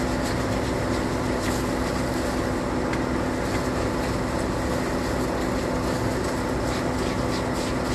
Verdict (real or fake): real